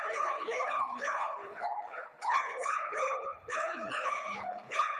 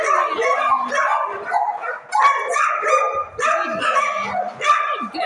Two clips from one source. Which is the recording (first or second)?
second